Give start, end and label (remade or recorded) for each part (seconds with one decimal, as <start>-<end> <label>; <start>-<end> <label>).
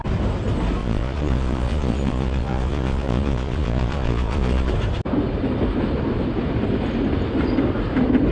0.0-0.8 recorded; 0.8-4.7 remade; 4.7-8.3 recorded